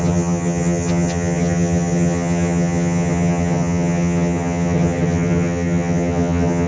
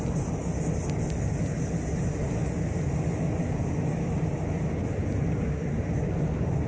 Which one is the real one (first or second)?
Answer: second